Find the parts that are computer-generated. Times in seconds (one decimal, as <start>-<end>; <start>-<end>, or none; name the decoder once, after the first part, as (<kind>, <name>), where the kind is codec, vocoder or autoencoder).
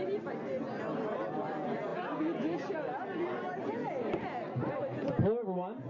none